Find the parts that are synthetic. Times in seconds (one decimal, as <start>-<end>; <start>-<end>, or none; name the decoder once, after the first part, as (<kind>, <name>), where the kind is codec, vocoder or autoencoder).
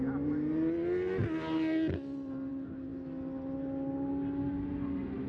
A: none